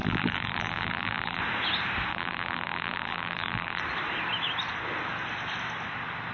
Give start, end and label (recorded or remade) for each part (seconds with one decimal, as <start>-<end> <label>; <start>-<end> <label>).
0.0-1.4 remade; 1.4-2.1 recorded; 2.1-3.8 remade; 3.8-6.3 recorded